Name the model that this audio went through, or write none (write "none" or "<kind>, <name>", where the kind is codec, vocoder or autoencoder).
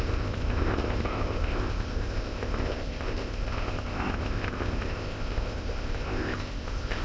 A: codec, ZipCodec